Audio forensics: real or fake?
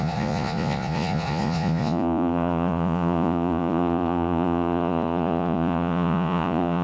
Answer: fake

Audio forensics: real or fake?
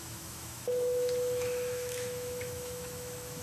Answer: fake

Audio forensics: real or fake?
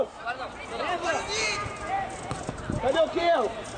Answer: real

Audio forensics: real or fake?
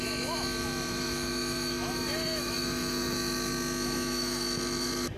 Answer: fake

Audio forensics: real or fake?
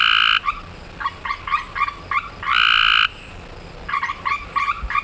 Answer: real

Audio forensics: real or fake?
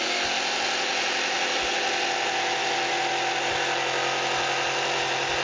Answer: real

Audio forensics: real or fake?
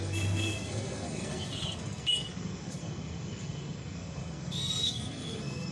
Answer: fake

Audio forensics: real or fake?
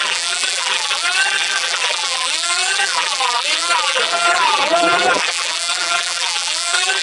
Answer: fake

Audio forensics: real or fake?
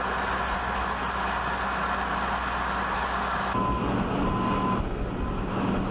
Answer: real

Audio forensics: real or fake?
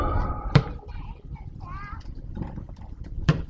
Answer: fake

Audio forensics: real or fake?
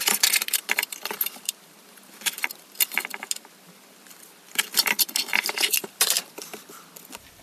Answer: real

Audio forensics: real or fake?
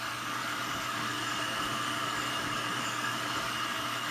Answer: fake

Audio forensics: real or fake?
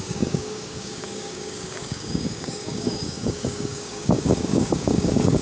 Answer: fake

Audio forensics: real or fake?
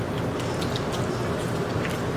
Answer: real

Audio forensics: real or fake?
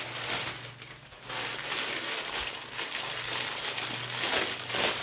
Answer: real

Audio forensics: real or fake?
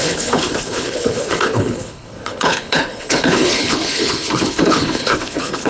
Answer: fake